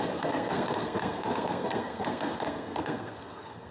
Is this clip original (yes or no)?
no